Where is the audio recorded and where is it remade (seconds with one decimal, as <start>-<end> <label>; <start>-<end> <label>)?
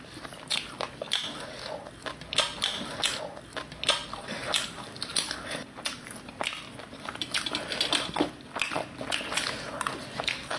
0.0-10.6 recorded